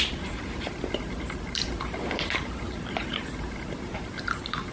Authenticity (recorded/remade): remade